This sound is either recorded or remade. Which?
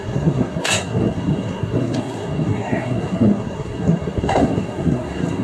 remade